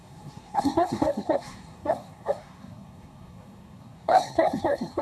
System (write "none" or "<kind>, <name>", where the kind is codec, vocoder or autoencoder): codec, SNAC